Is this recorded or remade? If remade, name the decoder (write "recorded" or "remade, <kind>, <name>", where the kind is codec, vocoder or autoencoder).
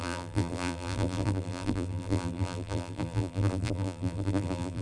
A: remade, vocoder, BigVGAN v2